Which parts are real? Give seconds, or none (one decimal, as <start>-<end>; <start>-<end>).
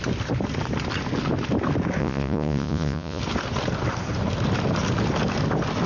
0.0-2.0; 3.2-5.9